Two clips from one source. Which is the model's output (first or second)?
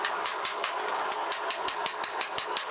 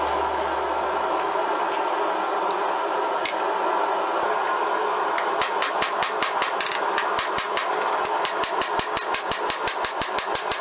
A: first